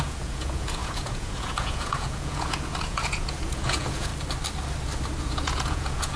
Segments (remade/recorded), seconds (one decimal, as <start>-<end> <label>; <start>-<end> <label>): 0.0-4.1 remade; 4.1-5.2 recorded; 5.2-6.2 remade